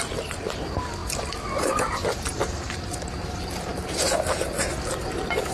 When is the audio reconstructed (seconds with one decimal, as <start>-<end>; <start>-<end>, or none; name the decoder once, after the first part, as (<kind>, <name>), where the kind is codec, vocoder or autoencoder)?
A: none